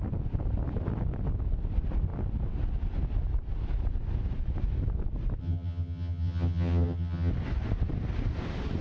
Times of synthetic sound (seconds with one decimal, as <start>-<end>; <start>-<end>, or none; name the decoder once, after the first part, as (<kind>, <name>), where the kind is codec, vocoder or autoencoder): 5.4-7.3 (vocoder, HiFi-GAN)